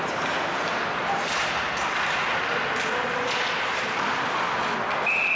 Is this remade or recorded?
recorded